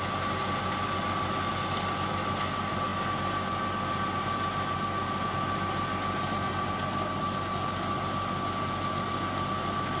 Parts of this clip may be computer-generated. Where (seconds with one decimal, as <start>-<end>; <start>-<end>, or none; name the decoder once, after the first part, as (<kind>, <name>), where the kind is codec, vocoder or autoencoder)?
none